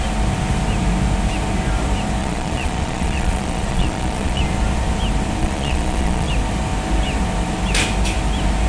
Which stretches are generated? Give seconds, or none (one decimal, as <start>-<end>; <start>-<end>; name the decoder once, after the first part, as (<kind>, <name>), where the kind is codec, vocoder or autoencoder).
2.2-4.4 (vocoder, Vocos); 5.4-6.3

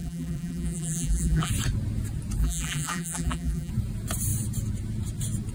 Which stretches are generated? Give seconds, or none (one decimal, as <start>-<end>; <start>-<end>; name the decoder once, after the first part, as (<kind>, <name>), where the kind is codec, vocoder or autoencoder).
0.0-1.5 (vocoder, BigVGAN v2); 2.4-3.7

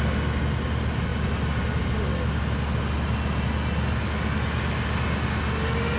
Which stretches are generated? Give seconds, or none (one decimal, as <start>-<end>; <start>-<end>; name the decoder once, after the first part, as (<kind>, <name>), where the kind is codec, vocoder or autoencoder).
none

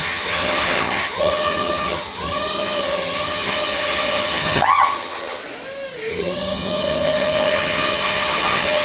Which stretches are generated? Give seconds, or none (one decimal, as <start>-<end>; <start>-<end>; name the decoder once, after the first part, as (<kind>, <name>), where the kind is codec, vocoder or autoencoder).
0.0-5.4 (vocoder, HiFi-GAN); 6.1-8.8

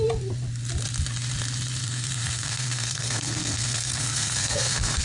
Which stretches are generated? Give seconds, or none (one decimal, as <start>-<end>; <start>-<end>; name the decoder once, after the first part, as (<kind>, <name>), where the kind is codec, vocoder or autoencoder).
1.8-5.0 (codec, SNAC)

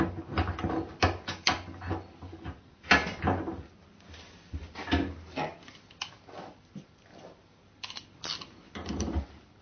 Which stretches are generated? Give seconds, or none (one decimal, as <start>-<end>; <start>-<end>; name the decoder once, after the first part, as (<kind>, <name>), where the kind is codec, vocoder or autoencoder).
none

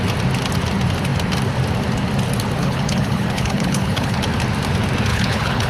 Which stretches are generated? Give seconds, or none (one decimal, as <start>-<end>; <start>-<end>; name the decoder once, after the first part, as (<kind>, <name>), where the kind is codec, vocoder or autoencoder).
2.6-4.2 (codec, HILCodec); 5.1-5.7